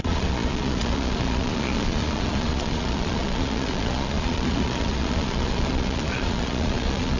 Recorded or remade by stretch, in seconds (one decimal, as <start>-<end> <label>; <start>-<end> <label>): 0.0-7.2 remade